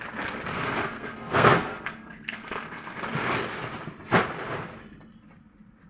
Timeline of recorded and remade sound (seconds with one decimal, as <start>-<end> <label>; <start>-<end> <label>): 0.0-0.5 recorded; 0.5-3.0 remade; 3.0-5.9 recorded

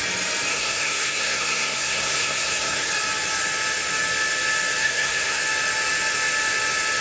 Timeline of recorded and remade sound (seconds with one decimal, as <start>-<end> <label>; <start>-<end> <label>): 0.0-0.5 recorded; 0.5-2.9 remade; 2.9-4.8 recorded; 4.8-5.4 remade; 5.4-7.0 recorded

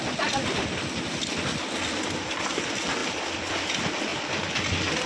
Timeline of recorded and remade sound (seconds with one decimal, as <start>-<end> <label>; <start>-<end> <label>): 0.0-5.1 recorded

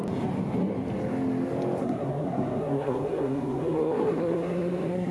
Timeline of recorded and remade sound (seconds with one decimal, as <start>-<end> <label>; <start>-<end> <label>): 0.0-1.8 recorded; 1.8-5.1 remade

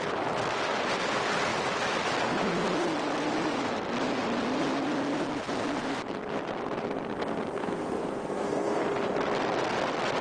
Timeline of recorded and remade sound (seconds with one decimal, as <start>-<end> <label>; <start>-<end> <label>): 0.0-7.6 recorded; 7.6-8.8 remade; 8.8-10.2 recorded

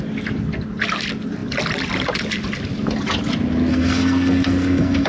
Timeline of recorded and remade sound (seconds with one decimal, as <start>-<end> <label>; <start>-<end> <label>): 0.0-3.7 recorded; 3.7-5.1 remade

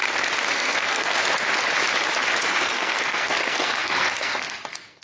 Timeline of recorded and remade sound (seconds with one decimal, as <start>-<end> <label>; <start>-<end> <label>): 0.0-0.5 recorded; 0.5-1.2 remade; 1.2-2.5 recorded; 2.5-5.0 remade